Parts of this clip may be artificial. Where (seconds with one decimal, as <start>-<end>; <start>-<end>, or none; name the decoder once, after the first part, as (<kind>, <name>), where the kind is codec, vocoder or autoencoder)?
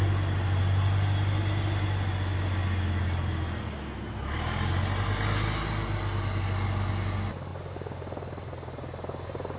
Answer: none